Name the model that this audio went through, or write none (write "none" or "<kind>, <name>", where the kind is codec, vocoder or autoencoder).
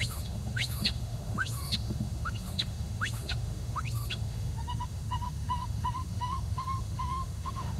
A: autoencoder, DAC-VAE